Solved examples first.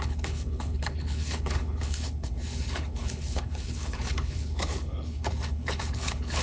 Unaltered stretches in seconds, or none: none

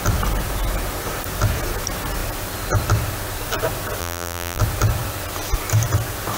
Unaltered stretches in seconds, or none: 0.0-4.0; 4.6-6.4

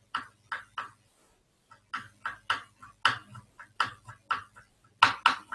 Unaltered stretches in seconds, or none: 0.0-5.5

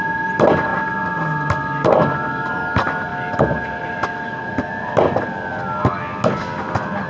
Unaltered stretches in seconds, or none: 0.0-7.1